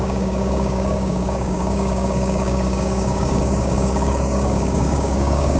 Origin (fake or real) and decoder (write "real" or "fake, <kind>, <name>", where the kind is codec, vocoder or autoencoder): fake, codec, DAC